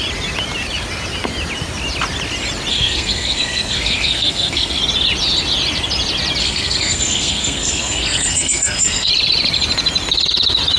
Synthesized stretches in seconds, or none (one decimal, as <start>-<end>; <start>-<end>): 2.7-4.8; 6.4-9.1